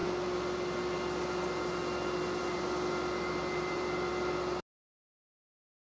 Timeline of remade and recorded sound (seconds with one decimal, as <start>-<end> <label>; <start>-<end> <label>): 0.0-3.5 recorded; 3.5-4.1 remade; 4.1-5.9 recorded